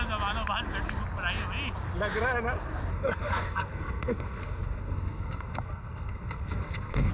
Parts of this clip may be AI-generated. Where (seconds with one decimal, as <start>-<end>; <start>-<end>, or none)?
2.9-7.1